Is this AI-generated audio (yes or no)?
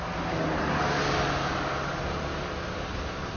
no